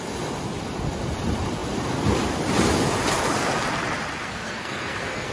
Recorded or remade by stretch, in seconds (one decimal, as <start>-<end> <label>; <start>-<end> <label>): 0.0-4.2 recorded; 4.2-5.3 remade